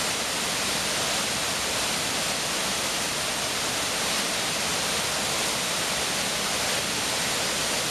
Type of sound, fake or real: real